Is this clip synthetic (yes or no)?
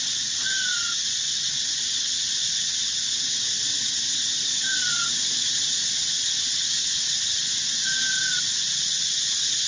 yes